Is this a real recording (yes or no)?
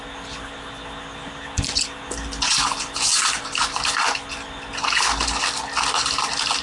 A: yes